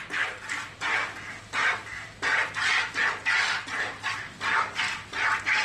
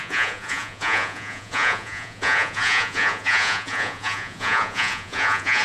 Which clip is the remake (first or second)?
second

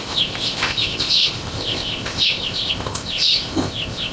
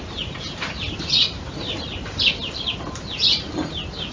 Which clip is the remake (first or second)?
first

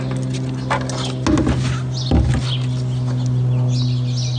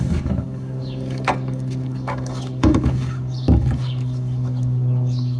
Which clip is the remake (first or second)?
second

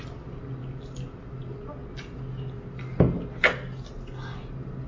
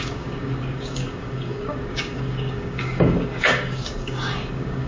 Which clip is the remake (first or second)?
second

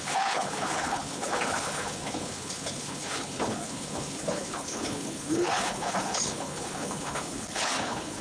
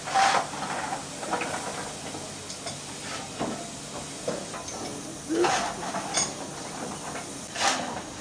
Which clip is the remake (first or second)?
first